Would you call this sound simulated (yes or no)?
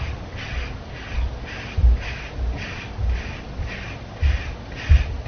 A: no